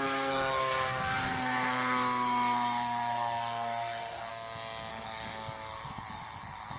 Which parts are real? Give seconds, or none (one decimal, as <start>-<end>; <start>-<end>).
4.3-4.9